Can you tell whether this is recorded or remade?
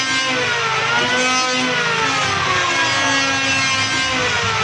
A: recorded